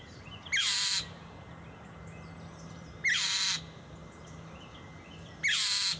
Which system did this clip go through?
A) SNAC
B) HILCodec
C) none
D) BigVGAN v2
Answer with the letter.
C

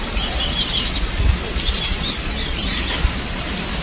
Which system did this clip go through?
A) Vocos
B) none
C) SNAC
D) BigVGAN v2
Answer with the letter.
B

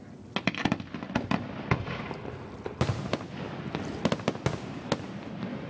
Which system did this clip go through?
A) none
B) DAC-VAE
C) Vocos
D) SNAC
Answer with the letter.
A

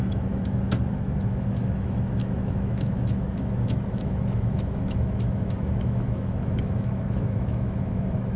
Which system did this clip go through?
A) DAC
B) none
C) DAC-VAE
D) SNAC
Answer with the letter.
C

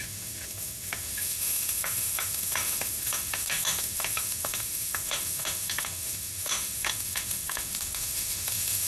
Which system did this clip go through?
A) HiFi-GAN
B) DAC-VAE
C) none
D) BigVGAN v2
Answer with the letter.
B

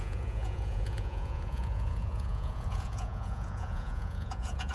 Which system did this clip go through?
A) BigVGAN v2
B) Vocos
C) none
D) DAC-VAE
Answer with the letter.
B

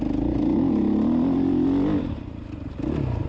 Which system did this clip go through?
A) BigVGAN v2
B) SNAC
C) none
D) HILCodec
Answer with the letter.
C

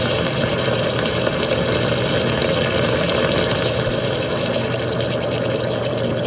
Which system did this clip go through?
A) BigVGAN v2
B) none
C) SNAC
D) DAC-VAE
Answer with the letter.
B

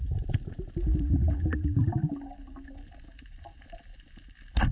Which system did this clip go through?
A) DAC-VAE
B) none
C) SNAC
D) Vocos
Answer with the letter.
B